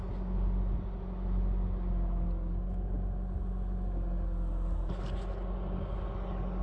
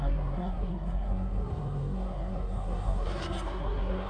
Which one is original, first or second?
first